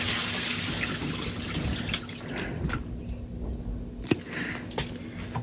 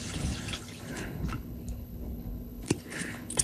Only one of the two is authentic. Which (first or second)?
first